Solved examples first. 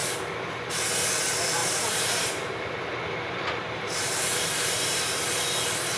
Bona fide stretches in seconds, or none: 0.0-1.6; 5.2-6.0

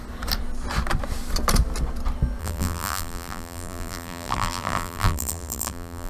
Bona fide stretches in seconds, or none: 0.0-2.4

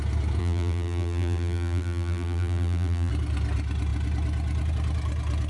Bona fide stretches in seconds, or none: 0.0-0.4; 3.1-5.5

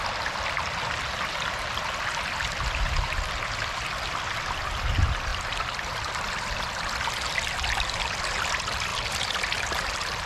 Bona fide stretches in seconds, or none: 0.0-10.3

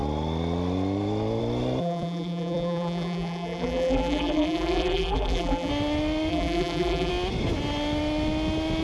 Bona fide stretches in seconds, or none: 0.0-1.8; 5.7-6.3; 7.1-8.8